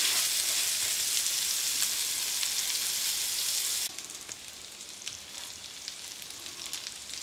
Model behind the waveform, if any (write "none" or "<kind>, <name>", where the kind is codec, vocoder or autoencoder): none